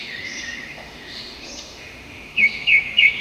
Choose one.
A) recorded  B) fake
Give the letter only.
B